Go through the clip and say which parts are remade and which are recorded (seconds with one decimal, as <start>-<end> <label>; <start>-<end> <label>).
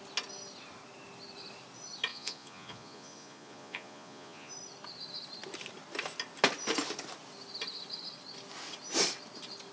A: 0.0-2.1 recorded; 2.1-4.5 remade; 4.5-9.7 recorded